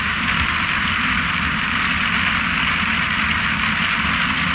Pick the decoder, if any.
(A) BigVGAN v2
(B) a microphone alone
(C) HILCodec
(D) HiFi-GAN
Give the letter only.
B